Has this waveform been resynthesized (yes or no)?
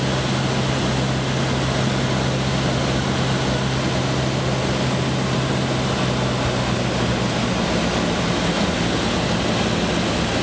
no